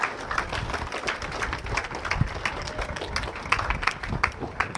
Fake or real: real